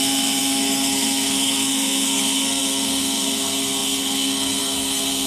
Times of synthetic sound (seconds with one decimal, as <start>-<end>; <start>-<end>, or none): 0.0-5.3